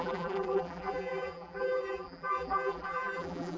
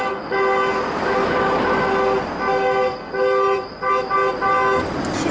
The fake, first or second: first